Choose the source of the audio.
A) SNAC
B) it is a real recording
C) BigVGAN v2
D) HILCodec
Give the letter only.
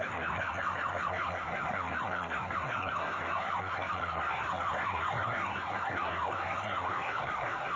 A